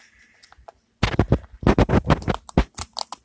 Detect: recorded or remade recorded